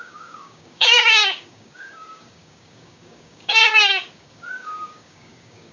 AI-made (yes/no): yes